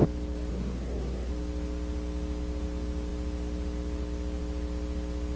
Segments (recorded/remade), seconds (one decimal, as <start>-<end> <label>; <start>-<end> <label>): 0.0-0.5 recorded; 0.5-1.3 remade; 1.3-5.4 recorded